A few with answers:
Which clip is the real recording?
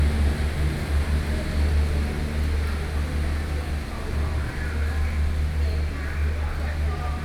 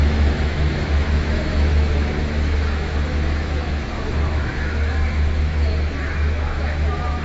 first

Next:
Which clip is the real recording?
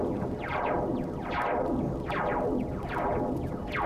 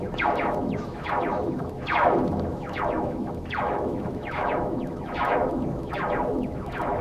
first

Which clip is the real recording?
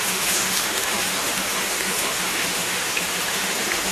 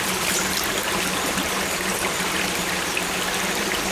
second